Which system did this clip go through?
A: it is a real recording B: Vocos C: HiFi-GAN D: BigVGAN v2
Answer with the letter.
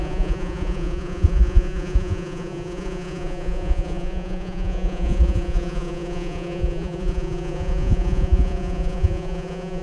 B